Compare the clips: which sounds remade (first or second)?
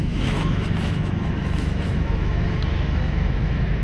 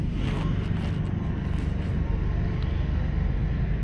first